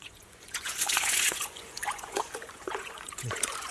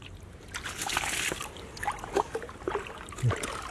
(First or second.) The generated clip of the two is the first